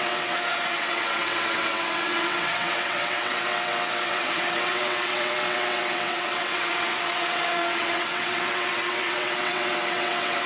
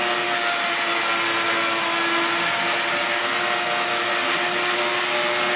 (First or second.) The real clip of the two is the second